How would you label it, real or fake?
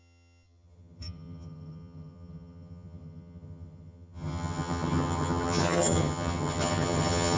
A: fake